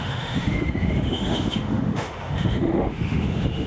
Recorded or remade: remade